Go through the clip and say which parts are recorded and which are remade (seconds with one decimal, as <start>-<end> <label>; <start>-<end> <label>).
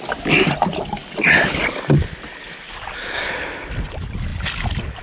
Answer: 0.0-5.0 recorded